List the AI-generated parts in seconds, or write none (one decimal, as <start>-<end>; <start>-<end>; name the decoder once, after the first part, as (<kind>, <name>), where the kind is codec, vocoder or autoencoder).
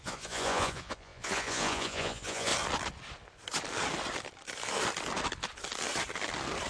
0.0-2.5 (vocoder, Vocos)